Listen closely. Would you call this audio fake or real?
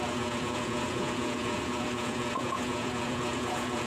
fake